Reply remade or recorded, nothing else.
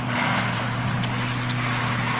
recorded